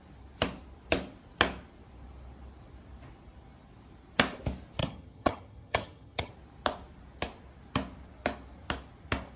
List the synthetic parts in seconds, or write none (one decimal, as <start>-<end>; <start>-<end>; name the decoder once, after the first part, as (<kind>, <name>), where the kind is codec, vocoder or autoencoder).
4.8-6.3 (vocoder, HiFi-GAN)

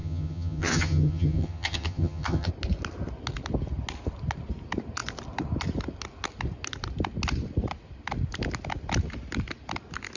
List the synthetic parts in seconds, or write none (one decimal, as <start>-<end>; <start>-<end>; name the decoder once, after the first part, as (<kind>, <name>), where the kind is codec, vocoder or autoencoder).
0.0-2.5 (vocoder, HiFi-GAN)

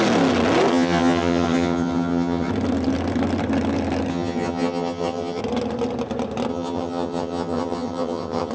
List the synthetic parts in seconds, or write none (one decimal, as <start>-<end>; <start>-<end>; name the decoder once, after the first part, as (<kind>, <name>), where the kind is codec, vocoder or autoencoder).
0.7-2.5 (vocoder, HiFi-GAN); 4.1-5.4; 6.5-8.5

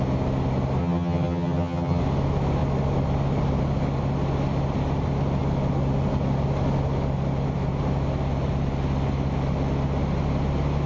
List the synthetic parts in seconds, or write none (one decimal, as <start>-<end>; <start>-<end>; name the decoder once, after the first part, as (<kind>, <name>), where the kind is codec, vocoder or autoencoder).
0.8-2.0 (vocoder, HiFi-GAN)

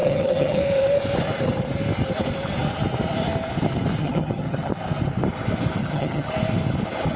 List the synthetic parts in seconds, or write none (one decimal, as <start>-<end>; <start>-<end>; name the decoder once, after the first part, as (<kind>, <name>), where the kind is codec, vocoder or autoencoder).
0.0-0.6 (vocoder, HiFi-GAN); 4.0-4.7; 5.8-6.3

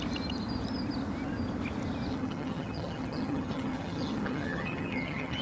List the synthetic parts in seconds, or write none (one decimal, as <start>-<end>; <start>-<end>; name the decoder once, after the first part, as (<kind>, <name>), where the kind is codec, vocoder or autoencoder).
2.1-5.4 (vocoder, HiFi-GAN)

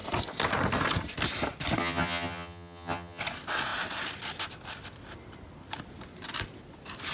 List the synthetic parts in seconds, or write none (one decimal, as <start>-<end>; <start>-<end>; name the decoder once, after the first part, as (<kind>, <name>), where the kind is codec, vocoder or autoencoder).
1.8-3.2 (vocoder, HiFi-GAN)

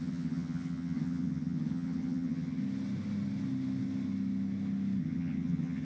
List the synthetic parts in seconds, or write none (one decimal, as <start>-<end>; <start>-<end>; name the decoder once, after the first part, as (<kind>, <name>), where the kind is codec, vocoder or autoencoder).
0.0-2.6 (vocoder, HiFi-GAN); 5.0-5.8